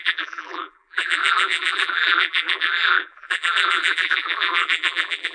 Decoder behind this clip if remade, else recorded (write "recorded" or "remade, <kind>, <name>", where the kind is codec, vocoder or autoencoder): remade, vocoder, BigVGAN v2